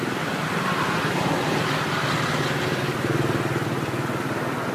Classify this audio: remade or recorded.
recorded